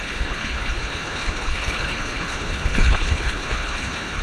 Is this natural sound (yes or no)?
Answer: no